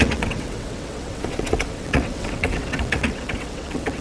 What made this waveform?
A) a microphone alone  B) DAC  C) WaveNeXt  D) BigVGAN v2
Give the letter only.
C